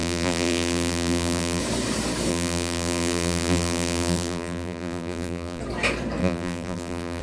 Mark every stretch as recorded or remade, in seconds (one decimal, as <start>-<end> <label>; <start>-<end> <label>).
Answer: 0.0-1.6 remade; 1.6-2.3 recorded; 2.3-5.6 remade; 5.6-6.2 recorded; 6.2-7.2 remade